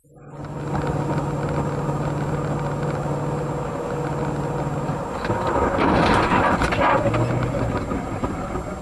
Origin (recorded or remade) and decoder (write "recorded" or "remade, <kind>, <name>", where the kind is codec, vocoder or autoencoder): recorded